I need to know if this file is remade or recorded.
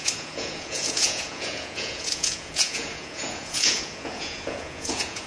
remade